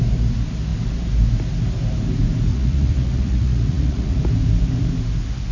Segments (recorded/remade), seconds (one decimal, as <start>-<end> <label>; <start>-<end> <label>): 0.0-2.5 recorded; 2.5-4.2 remade; 4.2-5.5 recorded